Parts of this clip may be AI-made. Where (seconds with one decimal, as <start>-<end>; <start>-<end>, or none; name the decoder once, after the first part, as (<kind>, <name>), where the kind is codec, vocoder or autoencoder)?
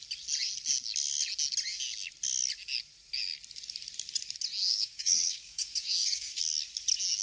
4.6-6.4 (codec, DAC)